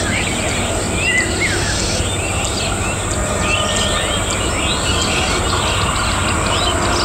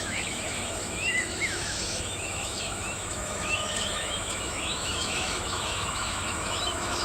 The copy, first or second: second